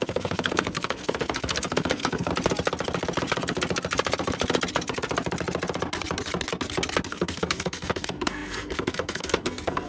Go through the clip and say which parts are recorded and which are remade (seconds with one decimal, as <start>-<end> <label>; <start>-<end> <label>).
0.0-2.3 remade; 2.3-7.1 recorded; 7.1-9.9 remade